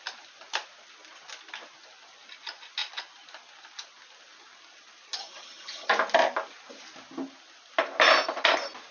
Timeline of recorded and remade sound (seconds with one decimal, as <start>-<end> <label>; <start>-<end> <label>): 0.0-5.2 recorded; 5.2-5.9 remade; 5.9-8.9 recorded